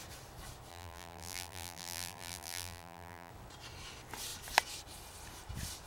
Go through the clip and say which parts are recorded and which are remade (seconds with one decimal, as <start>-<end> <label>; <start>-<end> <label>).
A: 0.0-0.7 recorded; 0.7-3.3 remade; 3.3-5.9 recorded